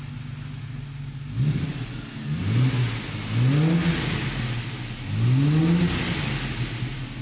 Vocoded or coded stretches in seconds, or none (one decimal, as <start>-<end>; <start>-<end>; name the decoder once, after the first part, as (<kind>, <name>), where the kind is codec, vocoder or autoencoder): none